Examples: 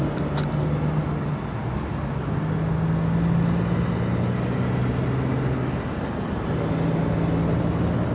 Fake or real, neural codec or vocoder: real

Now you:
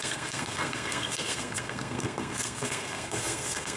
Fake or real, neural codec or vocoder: fake, codec, SNAC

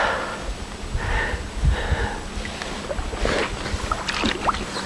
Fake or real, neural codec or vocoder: real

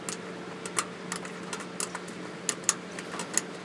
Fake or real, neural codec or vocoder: real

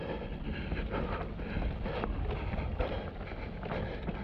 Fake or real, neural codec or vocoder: real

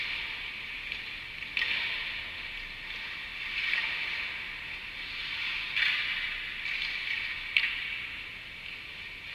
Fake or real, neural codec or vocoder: real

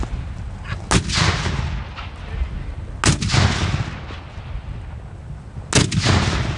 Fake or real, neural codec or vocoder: real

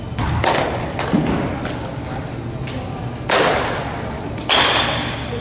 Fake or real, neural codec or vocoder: real